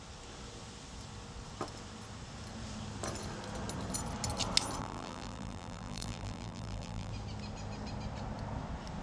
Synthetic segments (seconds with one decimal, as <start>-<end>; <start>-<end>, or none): 4.8-7.1